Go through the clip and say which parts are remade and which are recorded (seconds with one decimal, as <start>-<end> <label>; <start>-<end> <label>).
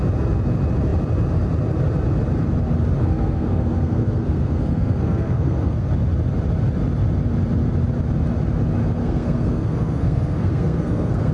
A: 0.0-3.0 recorded; 3.0-5.9 remade; 5.9-9.0 recorded; 9.0-11.3 remade